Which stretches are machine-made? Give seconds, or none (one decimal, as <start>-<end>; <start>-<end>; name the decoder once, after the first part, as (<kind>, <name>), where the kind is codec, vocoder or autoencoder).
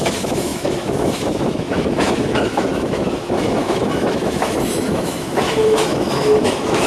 0.0-6.9 (autoencoder, DAC-VAE)